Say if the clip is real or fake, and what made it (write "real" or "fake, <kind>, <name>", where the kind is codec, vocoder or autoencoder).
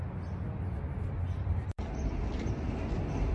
real